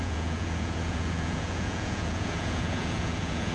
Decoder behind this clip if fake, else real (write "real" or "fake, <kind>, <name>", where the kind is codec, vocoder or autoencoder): fake, vocoder, Vocos